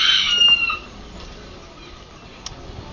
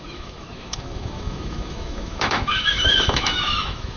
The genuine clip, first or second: first